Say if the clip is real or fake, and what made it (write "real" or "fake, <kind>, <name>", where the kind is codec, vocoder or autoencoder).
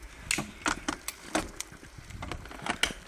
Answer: real